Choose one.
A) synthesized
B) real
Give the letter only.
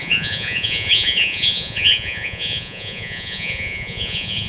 A